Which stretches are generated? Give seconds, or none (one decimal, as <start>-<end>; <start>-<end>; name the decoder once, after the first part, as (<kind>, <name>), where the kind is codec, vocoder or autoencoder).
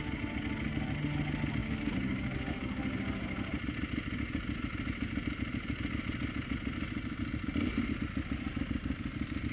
1.6-2.8 (codec, DAC)